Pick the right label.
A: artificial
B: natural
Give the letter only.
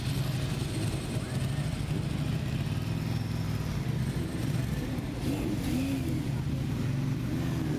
B